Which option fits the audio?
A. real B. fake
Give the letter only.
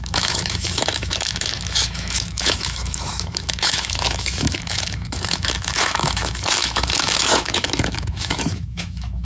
B